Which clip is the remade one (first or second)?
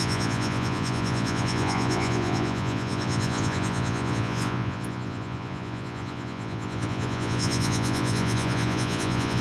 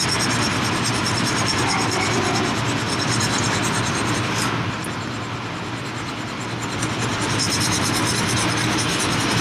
first